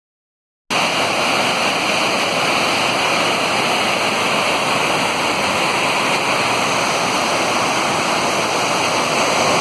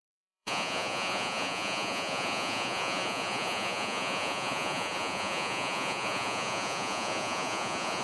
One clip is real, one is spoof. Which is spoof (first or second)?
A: second